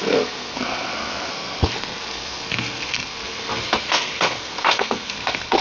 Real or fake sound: fake